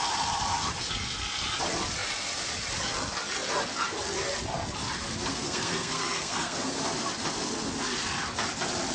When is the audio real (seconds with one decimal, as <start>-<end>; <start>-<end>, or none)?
0.0-5.3; 6.8-8.9